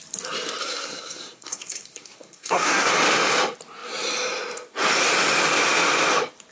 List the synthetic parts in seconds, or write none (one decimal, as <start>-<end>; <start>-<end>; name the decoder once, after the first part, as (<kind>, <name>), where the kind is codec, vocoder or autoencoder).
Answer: 0.6-2.9 (codec, SNAC)